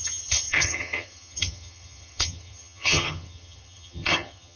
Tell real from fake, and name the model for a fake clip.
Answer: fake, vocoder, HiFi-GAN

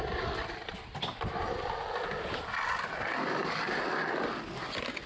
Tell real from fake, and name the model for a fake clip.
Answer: real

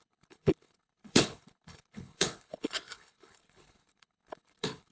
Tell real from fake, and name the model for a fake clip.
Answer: fake, codec, HILCodec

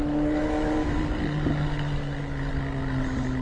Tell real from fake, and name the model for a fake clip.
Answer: real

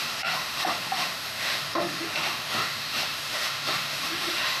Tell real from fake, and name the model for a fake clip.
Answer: fake, autoencoder, DAC-VAE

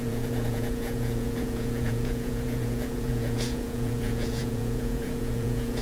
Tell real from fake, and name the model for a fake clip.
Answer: fake, vocoder, Vocos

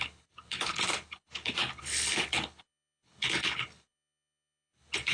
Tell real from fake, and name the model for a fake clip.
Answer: fake, codec, HILCodec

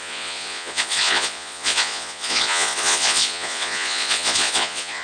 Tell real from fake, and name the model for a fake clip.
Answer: fake, vocoder, Vocos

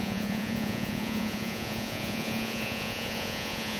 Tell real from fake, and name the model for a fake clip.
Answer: fake, vocoder, Vocos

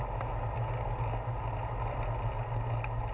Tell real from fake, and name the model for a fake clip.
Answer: real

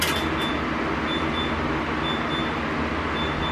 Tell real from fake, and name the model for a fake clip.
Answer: real